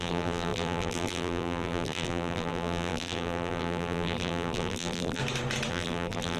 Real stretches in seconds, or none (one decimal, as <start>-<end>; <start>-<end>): 5.2-5.7